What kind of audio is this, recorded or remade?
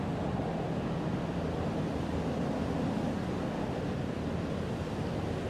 recorded